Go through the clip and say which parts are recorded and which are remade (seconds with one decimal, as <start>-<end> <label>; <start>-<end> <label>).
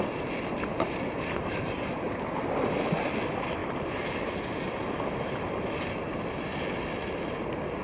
0.0-0.7 recorded; 0.7-2.4 remade; 2.4-3.6 recorded; 3.6-6.6 remade; 6.6-7.8 recorded